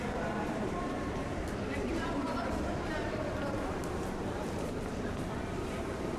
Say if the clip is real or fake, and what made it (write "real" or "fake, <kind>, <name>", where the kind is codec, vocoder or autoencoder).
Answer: fake, vocoder, BigVGAN v2